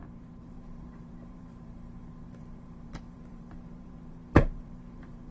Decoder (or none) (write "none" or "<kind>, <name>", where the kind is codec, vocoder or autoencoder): vocoder, BigVGAN v2